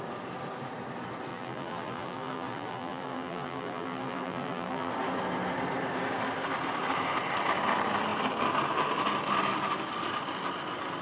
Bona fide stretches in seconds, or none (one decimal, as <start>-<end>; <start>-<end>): 0.0-1.3; 4.9-11.0

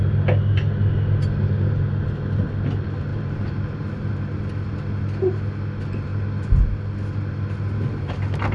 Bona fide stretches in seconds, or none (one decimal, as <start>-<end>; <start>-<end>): 0.0-3.1; 4.1-8.5

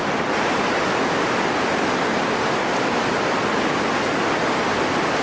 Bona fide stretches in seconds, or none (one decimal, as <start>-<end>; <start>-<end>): 0.0-5.2

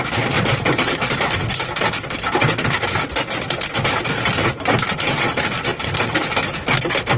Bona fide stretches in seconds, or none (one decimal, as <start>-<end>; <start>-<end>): 0.0-7.2

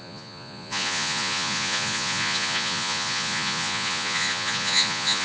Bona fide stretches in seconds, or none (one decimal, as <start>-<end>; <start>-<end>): none

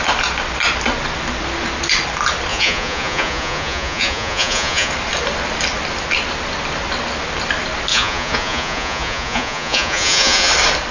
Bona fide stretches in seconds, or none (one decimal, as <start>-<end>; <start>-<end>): 0.0-2.5; 4.9-7.9; 10.5-10.9

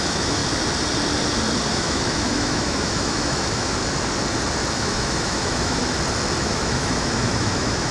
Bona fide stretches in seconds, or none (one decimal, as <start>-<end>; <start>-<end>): 0.4-1.7; 3.8-4.7; 5.8-6.4

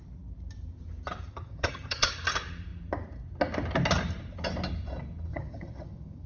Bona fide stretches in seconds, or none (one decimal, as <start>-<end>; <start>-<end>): 0.0-1.3; 2.1-5.3